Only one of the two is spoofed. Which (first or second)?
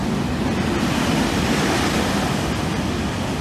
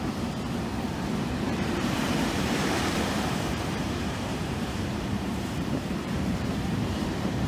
second